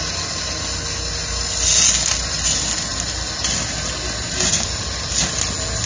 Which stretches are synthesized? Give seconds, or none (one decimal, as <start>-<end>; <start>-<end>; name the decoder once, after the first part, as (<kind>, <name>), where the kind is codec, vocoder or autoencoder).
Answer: none